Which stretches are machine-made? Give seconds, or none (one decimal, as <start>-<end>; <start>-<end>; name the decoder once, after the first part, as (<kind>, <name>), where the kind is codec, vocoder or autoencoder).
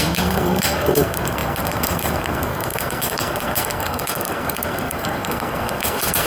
0.0-6.3 (codec, SNAC)